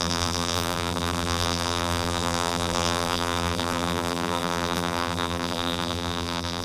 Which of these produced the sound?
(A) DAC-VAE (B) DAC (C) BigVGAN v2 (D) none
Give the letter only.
C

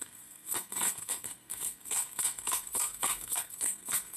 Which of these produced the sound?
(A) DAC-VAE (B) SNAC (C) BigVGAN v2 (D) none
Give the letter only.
B